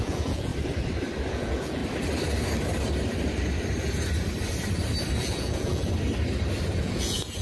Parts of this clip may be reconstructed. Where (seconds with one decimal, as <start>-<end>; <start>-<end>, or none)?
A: 0.0-0.5; 1.3-1.8; 5.2-5.9; 6.8-7.4